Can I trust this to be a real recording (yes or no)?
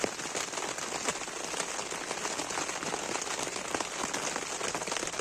yes